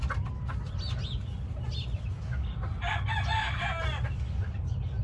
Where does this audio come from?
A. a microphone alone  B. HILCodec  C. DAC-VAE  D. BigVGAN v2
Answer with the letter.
A